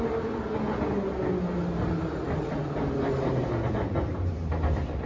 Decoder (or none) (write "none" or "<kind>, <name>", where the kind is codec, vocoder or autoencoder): none